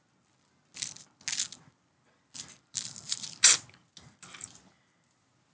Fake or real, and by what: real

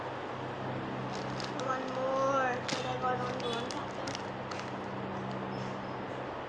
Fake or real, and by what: real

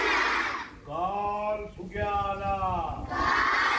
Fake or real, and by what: real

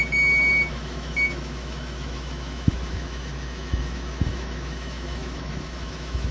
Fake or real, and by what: fake, autoencoder, DAC-VAE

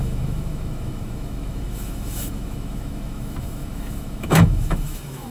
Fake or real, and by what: fake, autoencoder, DAC-VAE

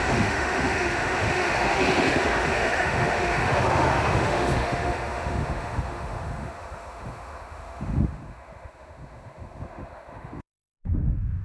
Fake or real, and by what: fake, autoencoder, DAC-VAE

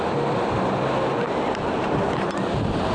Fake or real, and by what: real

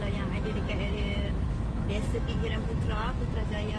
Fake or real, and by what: fake, autoencoder, DAC-VAE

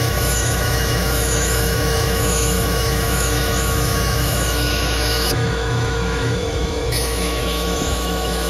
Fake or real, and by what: fake, autoencoder, DAC-VAE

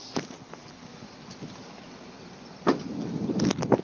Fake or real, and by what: real